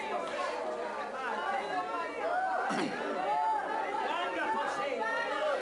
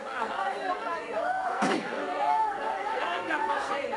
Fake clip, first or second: second